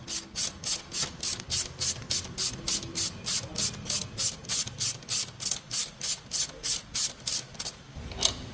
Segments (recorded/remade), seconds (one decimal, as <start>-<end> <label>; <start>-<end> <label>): 0.0-8.5 recorded